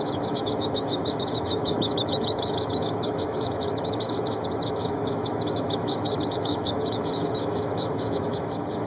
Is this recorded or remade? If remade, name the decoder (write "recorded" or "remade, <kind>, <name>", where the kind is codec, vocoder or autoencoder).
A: remade, autoencoder, DAC-VAE